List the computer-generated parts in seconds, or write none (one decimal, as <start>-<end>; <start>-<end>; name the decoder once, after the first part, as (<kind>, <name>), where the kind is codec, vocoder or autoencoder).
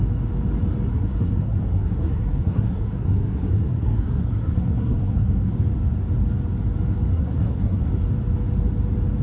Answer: 0.9-5.5 (codec, SNAC); 7.1-7.9